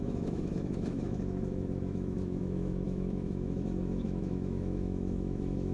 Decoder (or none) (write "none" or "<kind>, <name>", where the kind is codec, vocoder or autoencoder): autoencoder, DAC-VAE